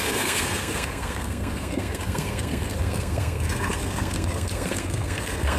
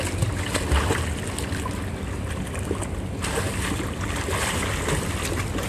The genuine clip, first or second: second